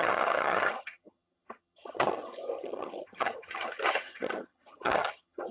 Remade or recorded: remade